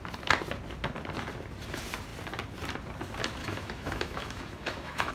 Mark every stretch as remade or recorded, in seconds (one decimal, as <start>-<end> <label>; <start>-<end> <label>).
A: 0.0-3.4 recorded; 3.4-5.1 remade